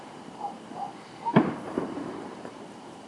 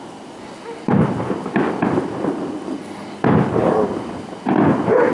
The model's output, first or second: first